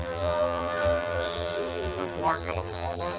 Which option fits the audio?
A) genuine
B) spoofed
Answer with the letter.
B